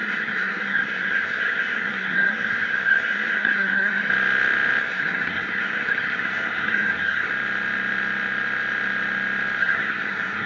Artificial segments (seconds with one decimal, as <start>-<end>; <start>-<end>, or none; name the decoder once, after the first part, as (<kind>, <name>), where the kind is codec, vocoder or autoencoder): 0.0-4.1 (codec, SNAC); 4.8-7.3; 9.6-10.5